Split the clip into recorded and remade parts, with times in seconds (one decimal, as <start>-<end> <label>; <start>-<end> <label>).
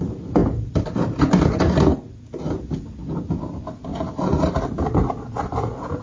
0.0-0.4 recorded; 0.4-1.2 remade; 1.2-6.0 recorded